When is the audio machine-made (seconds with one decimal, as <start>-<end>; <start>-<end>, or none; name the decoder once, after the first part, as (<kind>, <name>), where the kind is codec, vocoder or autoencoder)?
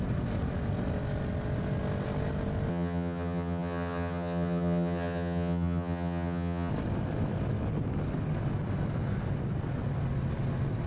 2.7-6.7 (vocoder, HiFi-GAN)